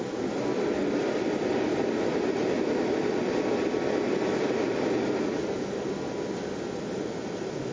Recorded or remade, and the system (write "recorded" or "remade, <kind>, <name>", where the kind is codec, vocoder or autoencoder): recorded